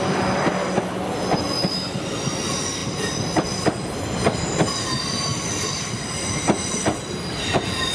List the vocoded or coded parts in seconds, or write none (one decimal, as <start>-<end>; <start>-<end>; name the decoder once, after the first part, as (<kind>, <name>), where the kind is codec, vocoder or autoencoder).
none